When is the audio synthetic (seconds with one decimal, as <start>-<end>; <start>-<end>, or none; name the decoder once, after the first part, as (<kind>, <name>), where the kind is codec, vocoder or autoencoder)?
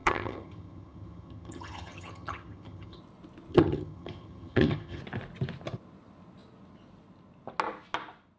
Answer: 0.0-3.0 (vocoder, HiFi-GAN); 3.5-5.0